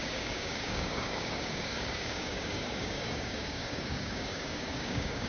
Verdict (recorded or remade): remade